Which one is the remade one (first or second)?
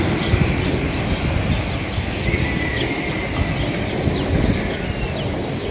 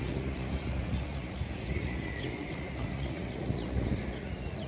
second